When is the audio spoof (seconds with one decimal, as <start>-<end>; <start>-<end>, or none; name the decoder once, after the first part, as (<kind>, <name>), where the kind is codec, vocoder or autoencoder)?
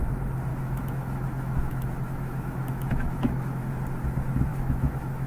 0.5-3.7 (autoencoder, DAC-VAE); 4.5-5.3